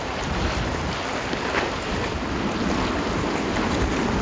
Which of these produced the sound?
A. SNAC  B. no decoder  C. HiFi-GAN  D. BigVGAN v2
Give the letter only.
B